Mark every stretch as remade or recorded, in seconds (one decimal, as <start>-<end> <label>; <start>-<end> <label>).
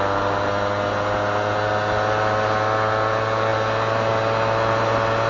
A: 0.0-5.3 recorded